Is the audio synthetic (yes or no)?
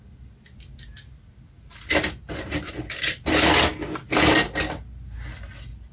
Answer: no